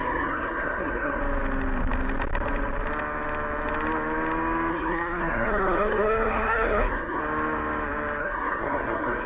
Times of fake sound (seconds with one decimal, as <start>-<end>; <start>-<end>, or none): 0.0-1.2; 4.7-7.2; 8.2-9.3